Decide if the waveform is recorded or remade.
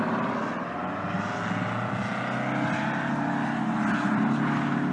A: recorded